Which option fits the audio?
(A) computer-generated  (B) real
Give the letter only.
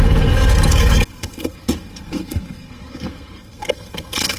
A